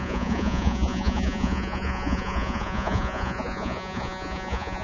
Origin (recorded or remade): remade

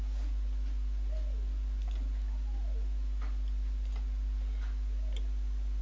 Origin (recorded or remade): recorded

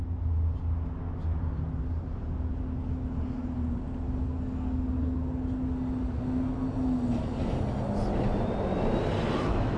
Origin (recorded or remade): recorded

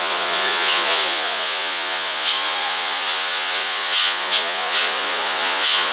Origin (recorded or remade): remade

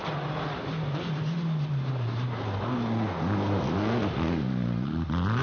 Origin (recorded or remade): recorded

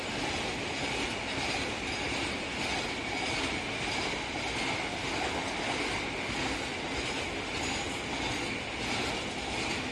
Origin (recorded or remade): recorded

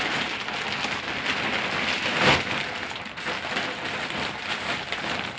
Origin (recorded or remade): recorded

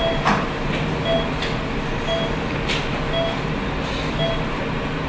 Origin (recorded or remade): recorded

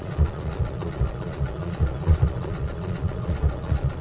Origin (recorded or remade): remade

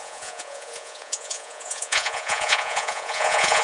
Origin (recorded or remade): remade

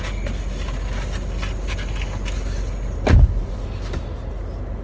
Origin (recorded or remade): recorded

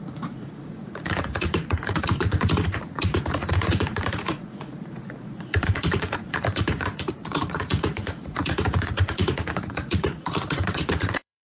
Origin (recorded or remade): remade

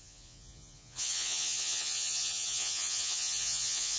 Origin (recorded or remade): remade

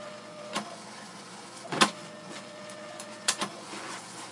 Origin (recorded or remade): remade